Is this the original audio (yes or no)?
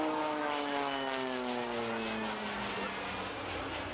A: yes